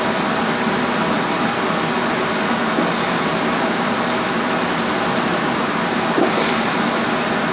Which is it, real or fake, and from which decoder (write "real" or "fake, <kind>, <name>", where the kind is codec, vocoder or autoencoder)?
real